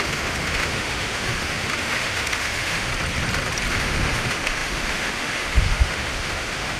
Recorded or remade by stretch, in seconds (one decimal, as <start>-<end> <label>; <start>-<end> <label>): 0.0-2.9 remade; 2.9-3.7 recorded; 3.7-6.8 remade